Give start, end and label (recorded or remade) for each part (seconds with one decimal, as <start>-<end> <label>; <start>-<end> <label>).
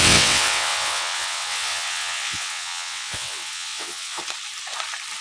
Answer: 0.0-4.2 remade; 4.2-5.2 recorded